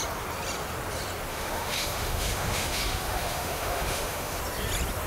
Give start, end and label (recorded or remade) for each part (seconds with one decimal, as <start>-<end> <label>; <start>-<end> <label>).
0.0-1.3 recorded; 1.3-4.4 remade; 4.4-5.1 recorded